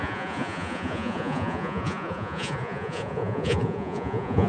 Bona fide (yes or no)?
no